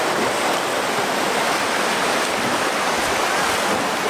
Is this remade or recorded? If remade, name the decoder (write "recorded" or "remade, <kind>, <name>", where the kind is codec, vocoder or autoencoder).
recorded